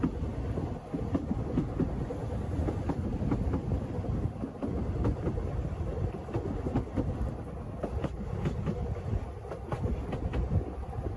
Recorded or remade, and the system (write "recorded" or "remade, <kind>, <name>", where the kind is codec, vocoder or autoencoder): recorded